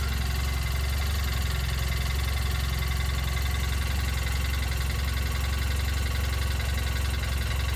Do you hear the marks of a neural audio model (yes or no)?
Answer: no